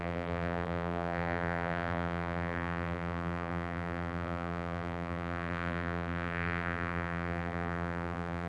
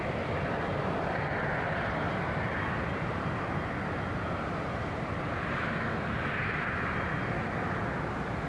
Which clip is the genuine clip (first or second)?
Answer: second